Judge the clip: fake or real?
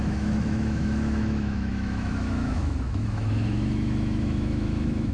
fake